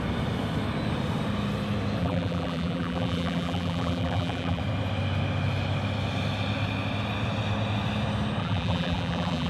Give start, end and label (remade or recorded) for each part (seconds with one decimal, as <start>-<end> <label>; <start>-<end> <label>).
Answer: 0.0-2.0 recorded; 2.0-4.6 remade; 4.6-8.4 recorded; 8.4-9.5 remade